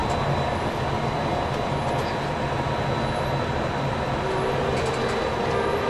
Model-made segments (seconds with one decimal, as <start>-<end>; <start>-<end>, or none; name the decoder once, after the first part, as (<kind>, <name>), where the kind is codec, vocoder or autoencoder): none